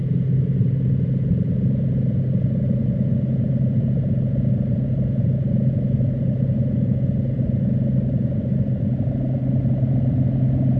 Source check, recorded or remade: recorded